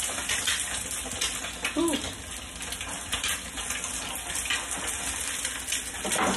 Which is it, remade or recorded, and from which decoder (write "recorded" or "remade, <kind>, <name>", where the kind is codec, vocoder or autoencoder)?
recorded